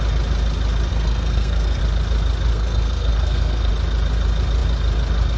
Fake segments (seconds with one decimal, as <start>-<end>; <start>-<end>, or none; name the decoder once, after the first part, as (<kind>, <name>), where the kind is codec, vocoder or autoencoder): 0.9-1.8 (codec, SNAC); 2.5-3.7